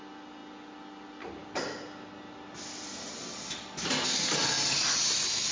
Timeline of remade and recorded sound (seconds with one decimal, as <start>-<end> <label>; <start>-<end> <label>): 0.0-5.5 recorded